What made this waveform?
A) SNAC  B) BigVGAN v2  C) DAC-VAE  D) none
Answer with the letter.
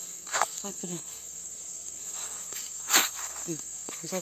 A